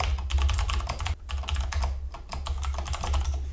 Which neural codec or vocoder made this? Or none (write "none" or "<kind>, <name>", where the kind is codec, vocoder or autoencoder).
none